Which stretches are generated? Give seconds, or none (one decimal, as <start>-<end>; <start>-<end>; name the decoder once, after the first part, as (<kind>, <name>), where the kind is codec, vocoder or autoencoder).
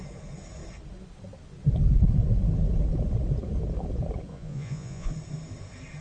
4.3-5.1 (vocoder, Vocos)